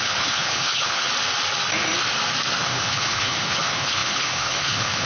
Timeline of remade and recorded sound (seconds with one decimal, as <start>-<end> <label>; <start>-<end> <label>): 0.0-1.1 remade; 1.1-2.6 recorded; 2.6-5.1 remade